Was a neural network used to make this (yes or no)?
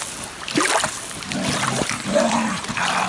no